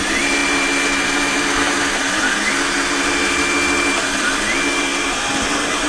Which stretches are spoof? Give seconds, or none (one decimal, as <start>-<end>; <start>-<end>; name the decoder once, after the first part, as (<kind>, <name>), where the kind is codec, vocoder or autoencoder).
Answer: none